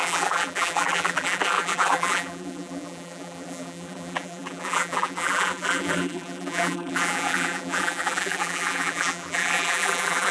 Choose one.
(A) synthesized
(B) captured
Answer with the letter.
A